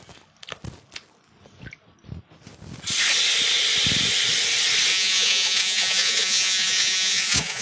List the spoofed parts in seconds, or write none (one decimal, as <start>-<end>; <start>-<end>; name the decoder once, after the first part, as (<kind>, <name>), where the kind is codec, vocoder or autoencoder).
4.9-7.6 (vocoder, Vocos)